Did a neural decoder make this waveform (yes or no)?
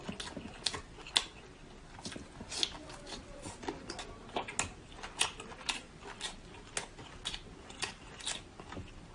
no